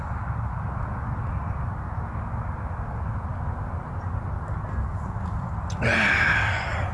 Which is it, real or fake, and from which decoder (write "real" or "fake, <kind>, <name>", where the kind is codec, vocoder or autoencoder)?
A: real